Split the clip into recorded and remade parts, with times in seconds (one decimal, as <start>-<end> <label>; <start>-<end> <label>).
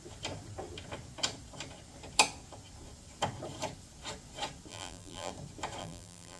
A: 0.0-4.7 recorded; 4.7-5.3 remade; 5.3-5.8 recorded; 5.8-6.4 remade